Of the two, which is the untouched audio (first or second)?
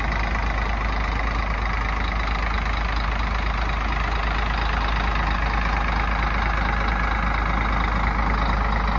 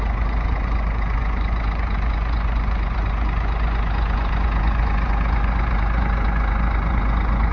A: first